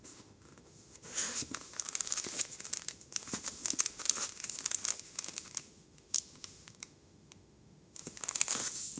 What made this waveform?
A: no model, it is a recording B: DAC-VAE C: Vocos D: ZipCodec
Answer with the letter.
B